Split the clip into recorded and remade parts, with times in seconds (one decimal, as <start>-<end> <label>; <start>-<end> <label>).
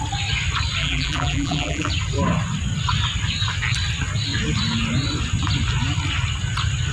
0.0-0.8 recorded; 0.8-1.9 remade; 1.9-6.9 recorded